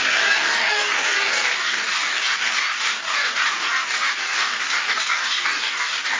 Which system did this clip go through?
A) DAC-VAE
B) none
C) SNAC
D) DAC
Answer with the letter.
D